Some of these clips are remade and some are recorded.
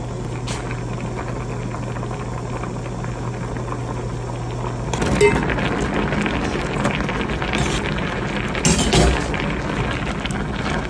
recorded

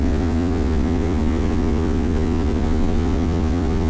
remade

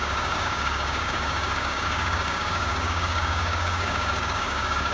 remade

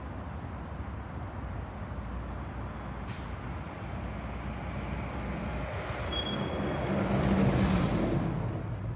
recorded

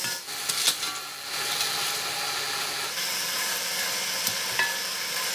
recorded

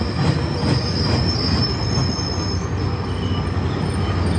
recorded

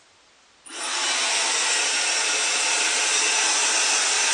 recorded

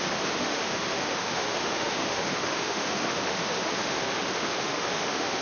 remade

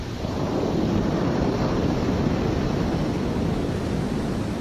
recorded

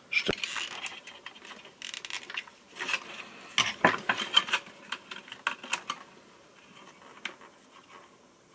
recorded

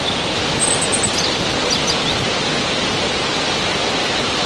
recorded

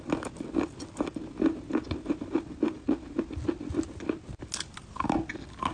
recorded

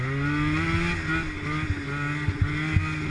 recorded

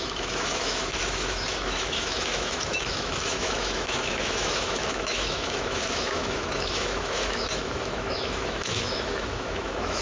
remade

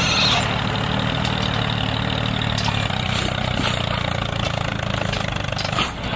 recorded